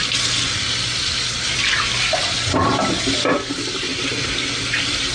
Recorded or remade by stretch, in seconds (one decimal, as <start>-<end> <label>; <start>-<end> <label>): 0.0-5.1 recorded